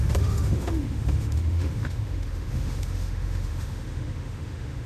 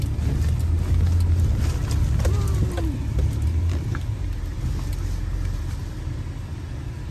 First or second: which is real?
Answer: second